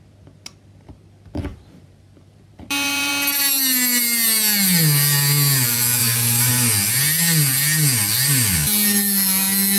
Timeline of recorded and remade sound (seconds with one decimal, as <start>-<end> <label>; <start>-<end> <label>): 0.0-1.5 recorded; 1.5-3.1 remade; 3.1-6.0 recorded; 6.0-6.5 remade; 6.5-9.8 recorded

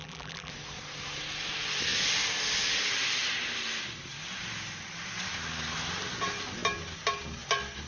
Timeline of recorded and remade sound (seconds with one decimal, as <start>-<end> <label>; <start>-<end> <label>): 0.0-0.5 remade; 0.5-7.9 recorded

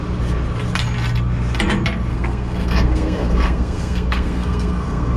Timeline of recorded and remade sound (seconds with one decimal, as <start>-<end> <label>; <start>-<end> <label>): 0.0-2.1 recorded; 2.1-5.2 remade

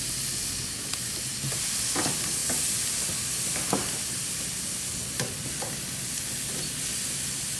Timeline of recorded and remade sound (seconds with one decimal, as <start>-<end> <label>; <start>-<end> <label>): 0.0-7.6 recorded

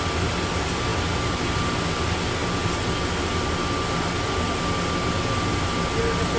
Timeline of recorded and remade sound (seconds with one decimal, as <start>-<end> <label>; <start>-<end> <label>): 0.0-6.4 recorded

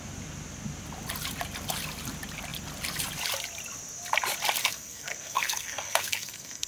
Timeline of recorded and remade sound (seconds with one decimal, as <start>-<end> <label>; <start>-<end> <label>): 0.0-4.6 recorded; 4.6-6.7 remade